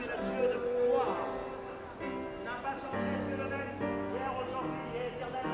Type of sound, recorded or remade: recorded